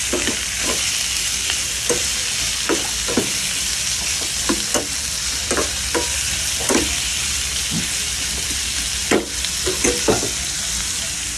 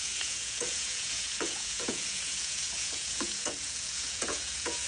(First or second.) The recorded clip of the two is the first